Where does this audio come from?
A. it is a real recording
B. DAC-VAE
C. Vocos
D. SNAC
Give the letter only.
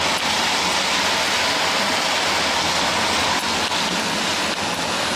A